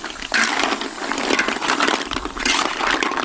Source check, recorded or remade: recorded